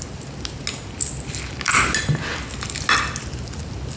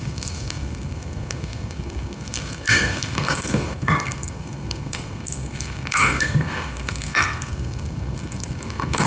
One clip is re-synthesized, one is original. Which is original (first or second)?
first